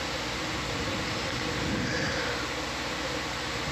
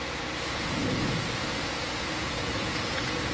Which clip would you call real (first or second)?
first